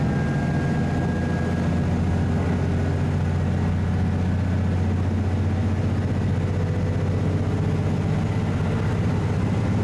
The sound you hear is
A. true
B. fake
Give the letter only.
A